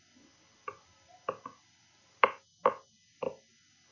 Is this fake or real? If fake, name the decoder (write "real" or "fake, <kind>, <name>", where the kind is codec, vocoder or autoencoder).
real